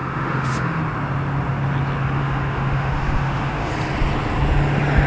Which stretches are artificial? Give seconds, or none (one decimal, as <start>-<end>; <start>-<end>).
0.0-0.8; 2.2-3.7